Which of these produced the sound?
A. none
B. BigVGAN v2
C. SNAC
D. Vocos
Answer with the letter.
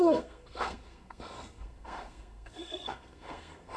C